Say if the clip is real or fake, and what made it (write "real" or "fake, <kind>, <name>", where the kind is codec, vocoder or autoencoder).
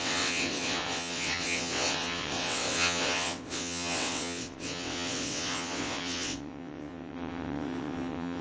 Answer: fake, vocoder, WaveNeXt